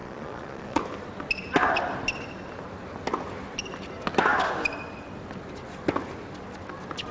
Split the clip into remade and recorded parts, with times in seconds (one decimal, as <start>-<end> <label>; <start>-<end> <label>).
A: 0.0-0.8 remade; 0.8-7.1 recorded